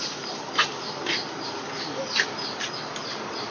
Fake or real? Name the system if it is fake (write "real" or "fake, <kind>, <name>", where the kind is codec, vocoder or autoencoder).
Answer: real